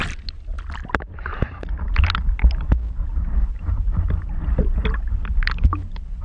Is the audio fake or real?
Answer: real